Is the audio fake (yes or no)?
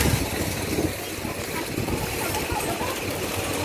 no